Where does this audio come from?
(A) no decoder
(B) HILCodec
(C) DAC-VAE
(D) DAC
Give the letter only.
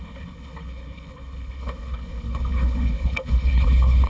B